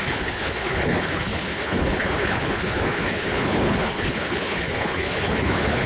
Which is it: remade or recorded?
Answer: remade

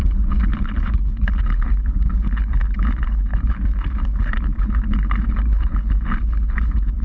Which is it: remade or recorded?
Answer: remade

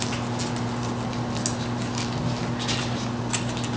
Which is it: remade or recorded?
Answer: recorded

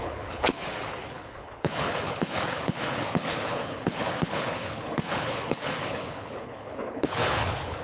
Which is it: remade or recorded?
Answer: remade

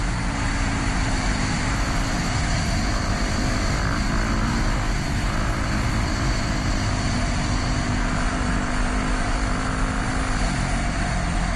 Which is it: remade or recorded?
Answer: recorded